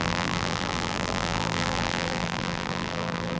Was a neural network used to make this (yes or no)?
yes